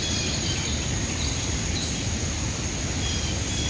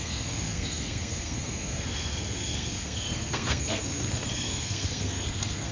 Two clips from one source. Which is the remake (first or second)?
second